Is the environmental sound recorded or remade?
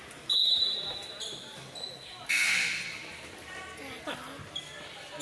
recorded